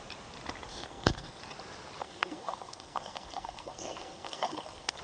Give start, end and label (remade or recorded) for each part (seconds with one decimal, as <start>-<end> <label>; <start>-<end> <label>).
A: 0.0-0.7 recorded; 0.7-1.4 remade; 1.4-2.0 recorded; 2.0-5.0 remade